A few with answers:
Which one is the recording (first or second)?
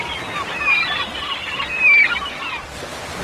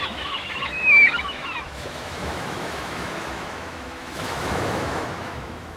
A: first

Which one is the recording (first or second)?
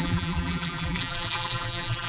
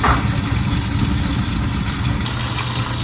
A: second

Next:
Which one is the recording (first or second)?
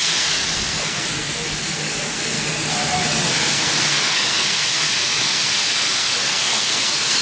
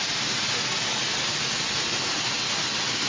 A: second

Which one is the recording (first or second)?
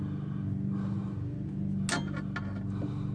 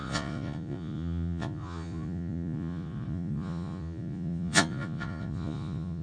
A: first